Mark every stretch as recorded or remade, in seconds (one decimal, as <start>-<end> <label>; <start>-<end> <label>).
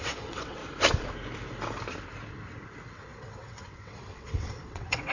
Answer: 0.0-0.6 remade; 0.6-2.9 recorded; 2.9-5.1 remade